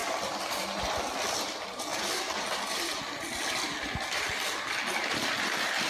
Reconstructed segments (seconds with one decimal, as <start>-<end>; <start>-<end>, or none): 0.5-5.9